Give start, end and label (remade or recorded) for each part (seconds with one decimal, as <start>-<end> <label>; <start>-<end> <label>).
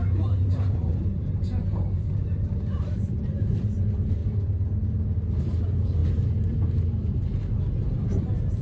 0.0-4.2 remade; 4.2-5.4 recorded; 5.4-6.0 remade; 6.0-7.8 recorded; 7.8-8.6 remade